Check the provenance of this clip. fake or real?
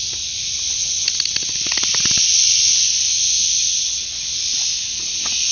real